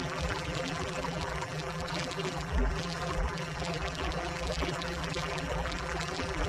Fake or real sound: fake